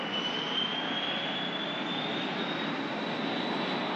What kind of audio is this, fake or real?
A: real